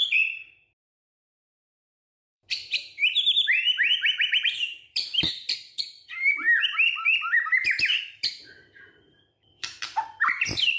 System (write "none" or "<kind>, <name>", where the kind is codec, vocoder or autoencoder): vocoder, BigVGAN v2